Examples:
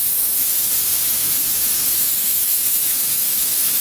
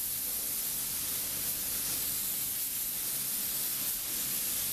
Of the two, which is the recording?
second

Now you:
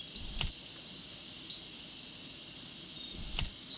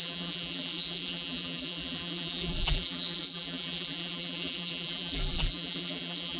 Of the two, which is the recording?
first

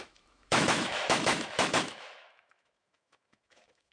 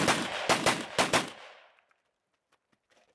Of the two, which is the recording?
second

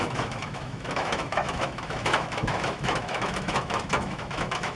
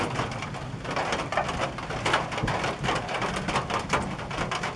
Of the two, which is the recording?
second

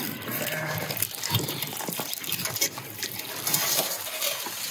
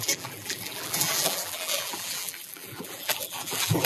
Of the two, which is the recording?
first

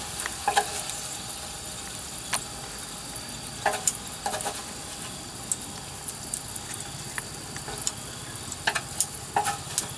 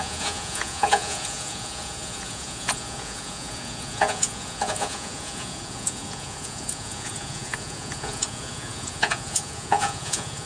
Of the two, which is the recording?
first